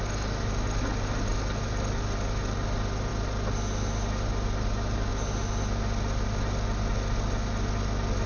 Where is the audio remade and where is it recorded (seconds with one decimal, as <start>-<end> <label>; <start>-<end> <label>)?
0.0-8.3 recorded